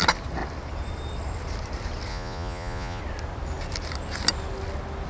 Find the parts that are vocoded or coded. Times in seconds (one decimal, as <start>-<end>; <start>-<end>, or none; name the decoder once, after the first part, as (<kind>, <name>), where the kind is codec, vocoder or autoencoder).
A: 2.1-3.0 (vocoder, Vocos)

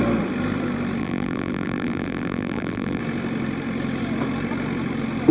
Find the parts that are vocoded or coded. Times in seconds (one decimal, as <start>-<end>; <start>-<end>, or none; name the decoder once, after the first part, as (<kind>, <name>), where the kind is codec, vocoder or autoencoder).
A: 1.0-3.0 (vocoder, BigVGAN v2)

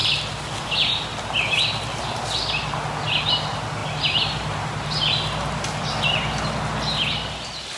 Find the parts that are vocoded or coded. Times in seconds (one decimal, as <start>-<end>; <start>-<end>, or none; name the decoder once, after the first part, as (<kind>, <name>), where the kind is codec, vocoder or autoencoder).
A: none